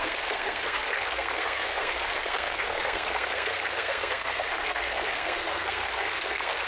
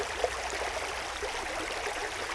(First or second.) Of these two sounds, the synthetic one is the first